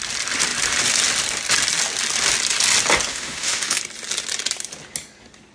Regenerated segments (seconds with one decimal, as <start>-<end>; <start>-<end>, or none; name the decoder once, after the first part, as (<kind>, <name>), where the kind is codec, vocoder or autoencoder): 3.1-3.8 (autoencoder, DAC-VAE)